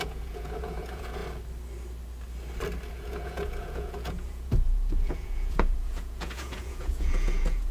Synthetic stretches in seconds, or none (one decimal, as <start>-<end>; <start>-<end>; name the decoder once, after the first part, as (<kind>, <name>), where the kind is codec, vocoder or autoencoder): 0.0-1.2 (vocoder, Vocos); 2.9-7.7